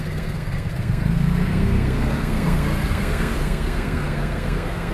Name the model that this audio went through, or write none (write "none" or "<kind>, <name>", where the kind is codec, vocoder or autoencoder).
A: codec, SNAC